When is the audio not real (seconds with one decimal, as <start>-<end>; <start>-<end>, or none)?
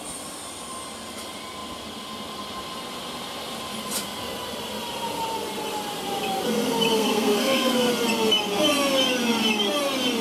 6.9-7.9